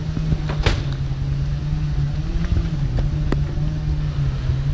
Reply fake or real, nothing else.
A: real